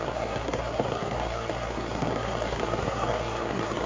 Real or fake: fake